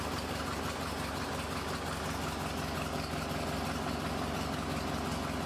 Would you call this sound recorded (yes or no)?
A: yes